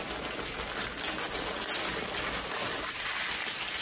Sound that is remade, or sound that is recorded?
recorded